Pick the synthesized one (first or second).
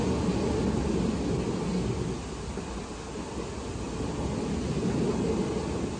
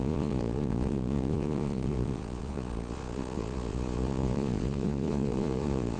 second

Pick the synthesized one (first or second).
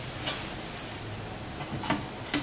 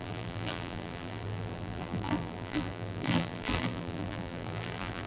second